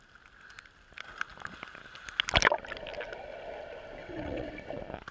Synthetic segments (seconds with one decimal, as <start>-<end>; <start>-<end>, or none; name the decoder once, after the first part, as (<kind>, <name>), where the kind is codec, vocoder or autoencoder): 4.0-4.5 (vocoder, WaveNeXt)

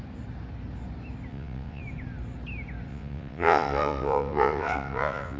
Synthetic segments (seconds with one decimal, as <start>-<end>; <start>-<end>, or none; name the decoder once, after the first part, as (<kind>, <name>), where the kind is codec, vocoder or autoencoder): 1.3-1.8 (vocoder, WaveNeXt); 2.9-5.4